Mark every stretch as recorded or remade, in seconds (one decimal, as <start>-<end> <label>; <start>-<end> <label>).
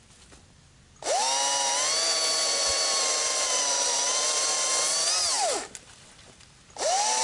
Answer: 0.0-3.2 recorded; 3.2-4.7 remade; 4.7-7.2 recorded